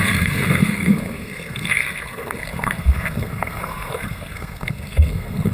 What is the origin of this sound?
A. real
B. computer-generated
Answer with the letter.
B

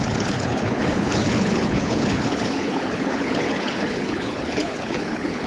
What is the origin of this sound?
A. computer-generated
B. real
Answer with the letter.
A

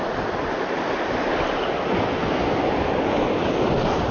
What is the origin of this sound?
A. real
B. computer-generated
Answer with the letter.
A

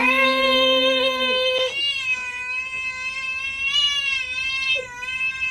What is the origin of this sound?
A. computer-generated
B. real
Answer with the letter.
B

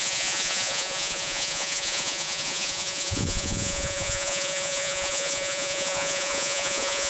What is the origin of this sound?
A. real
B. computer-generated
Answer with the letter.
B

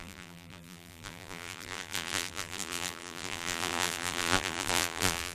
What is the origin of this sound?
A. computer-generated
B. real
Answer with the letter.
A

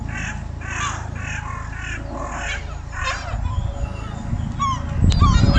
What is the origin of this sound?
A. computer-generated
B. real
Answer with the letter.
B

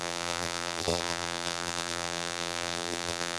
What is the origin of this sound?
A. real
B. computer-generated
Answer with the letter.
B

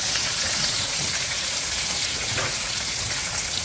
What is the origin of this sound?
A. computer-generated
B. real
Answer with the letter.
A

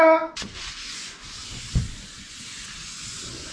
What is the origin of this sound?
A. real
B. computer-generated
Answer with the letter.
B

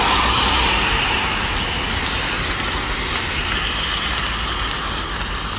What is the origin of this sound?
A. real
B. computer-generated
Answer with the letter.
A